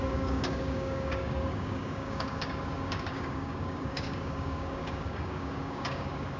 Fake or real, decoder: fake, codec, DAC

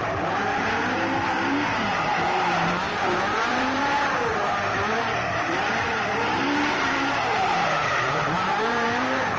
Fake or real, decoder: fake, vocoder, BigVGAN v2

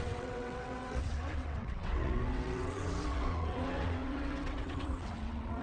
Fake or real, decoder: fake, vocoder, WaveNeXt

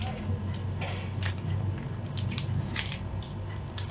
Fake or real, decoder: real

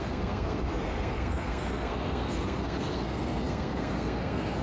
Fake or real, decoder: fake, codec, SNAC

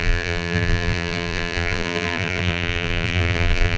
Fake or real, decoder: fake, vocoder, BigVGAN v2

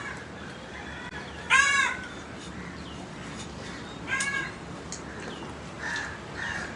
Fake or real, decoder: real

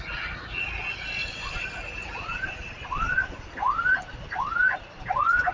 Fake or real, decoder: real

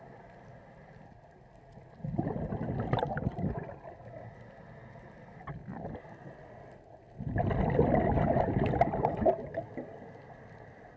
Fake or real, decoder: real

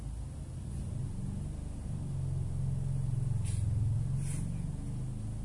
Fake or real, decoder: real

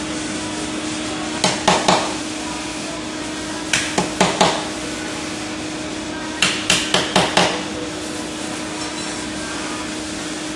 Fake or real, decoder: real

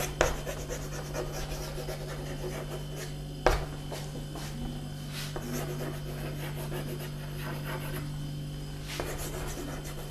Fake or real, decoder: real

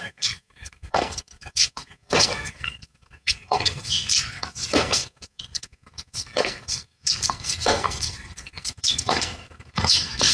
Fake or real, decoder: fake, codec, SNAC